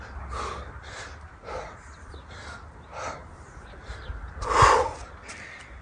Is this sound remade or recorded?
recorded